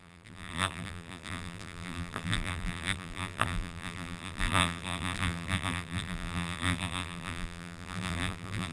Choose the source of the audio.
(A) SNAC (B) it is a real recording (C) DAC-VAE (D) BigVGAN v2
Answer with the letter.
D